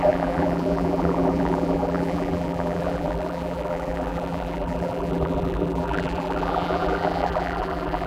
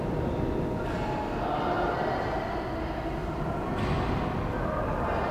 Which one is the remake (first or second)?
first